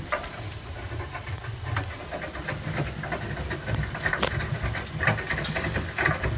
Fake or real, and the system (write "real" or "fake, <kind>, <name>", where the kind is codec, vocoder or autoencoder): real